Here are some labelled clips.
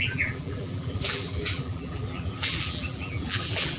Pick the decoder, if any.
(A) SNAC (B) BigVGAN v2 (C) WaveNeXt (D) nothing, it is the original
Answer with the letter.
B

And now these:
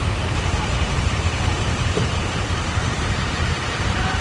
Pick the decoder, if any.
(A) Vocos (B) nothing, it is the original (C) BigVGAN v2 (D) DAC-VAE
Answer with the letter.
C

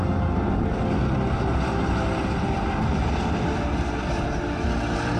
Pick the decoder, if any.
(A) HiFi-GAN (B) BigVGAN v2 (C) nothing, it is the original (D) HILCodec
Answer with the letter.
C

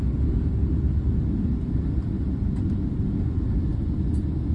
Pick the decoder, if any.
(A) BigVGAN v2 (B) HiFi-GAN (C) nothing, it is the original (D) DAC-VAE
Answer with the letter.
C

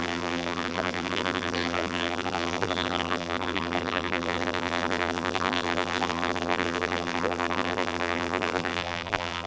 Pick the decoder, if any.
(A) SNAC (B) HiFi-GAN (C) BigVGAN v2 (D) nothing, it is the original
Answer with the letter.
C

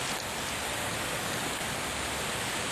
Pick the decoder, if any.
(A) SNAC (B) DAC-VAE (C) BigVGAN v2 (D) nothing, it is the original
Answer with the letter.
D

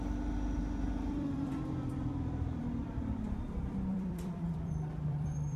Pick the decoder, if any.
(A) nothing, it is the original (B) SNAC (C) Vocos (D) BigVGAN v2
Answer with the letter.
D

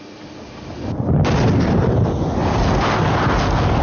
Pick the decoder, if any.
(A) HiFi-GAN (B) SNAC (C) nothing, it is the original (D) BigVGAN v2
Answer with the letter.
C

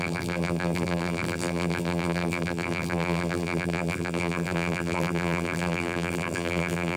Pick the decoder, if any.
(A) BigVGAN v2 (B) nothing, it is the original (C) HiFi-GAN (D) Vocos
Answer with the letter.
A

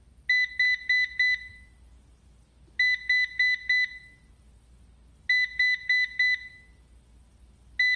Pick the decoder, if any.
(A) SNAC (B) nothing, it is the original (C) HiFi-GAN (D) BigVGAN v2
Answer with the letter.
B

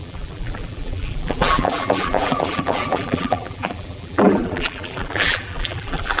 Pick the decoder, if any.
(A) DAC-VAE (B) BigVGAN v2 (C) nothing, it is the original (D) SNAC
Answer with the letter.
B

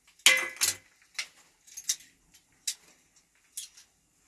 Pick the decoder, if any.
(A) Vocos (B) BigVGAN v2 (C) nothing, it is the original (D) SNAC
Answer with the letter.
C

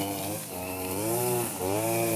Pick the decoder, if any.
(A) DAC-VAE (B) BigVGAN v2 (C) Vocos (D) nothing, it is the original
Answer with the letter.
B